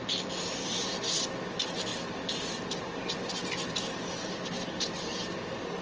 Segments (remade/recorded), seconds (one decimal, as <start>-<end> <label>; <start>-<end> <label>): 0.0-5.8 recorded